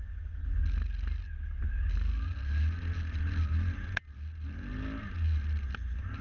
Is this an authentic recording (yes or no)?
yes